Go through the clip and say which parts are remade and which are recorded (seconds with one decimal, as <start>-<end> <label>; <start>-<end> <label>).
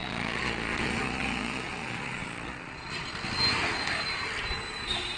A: 0.0-3.1 remade; 3.1-5.2 recorded